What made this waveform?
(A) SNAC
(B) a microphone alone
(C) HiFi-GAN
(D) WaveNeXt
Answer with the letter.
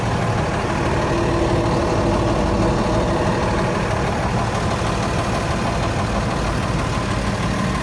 B